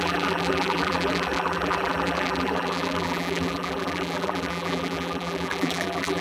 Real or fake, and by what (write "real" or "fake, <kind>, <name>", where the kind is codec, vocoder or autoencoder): fake, vocoder, BigVGAN v2